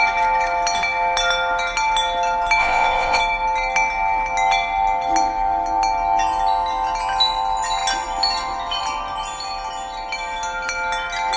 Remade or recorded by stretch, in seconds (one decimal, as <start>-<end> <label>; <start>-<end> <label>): 0.0-2.6 recorded; 2.6-3.2 remade; 3.2-11.4 recorded